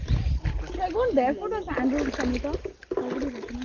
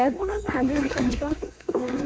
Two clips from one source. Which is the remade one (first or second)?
second